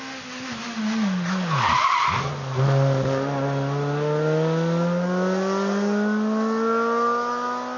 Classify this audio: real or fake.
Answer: real